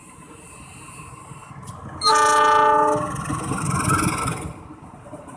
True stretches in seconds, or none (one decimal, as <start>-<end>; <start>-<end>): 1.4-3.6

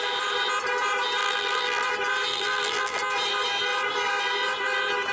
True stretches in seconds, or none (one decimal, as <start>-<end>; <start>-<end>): 0.0-1.2; 1.9-2.3; 3.0-5.1

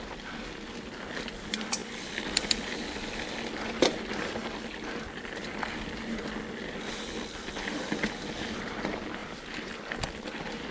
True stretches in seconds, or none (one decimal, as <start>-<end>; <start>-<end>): 0.0-10.7

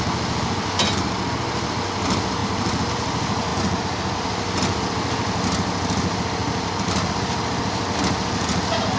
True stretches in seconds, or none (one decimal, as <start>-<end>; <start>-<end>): 0.0-9.0

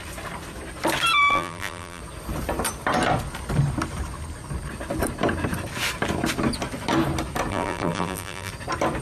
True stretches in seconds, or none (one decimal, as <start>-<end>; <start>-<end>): 0.0-1.3; 2.0-7.5; 8.5-9.0

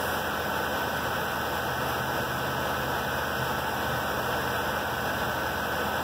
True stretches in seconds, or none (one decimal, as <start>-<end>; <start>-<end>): 0.0-6.0